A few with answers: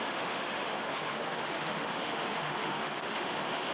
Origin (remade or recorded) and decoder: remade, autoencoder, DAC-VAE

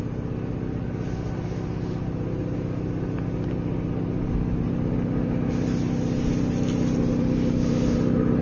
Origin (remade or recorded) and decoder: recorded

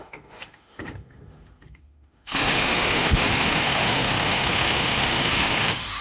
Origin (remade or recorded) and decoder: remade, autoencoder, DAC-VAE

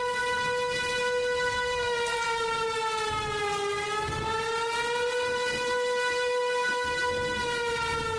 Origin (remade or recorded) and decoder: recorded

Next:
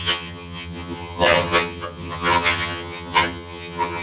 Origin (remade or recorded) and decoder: remade, vocoder, HiFi-GAN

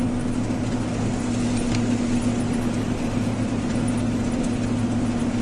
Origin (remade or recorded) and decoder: recorded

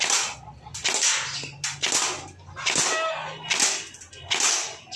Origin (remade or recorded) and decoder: recorded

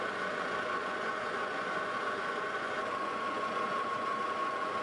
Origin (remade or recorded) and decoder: remade, vocoder, Vocos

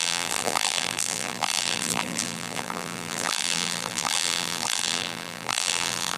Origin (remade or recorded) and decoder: remade, vocoder, BigVGAN v2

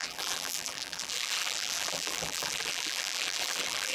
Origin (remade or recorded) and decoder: remade, vocoder, BigVGAN v2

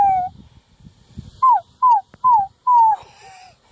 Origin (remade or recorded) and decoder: recorded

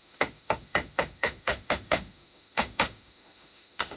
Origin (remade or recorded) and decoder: remade, autoencoder, DAC-VAE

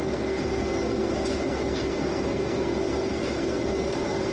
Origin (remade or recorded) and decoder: remade, codec, SNAC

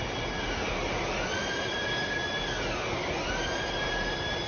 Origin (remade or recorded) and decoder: recorded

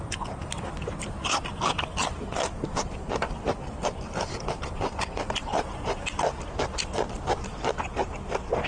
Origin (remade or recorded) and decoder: recorded